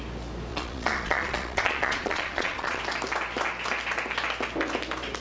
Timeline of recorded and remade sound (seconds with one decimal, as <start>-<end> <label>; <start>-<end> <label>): 0.0-0.5 recorded; 0.5-2.8 remade; 2.8-5.2 recorded